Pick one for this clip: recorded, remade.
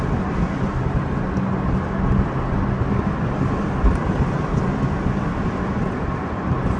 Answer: recorded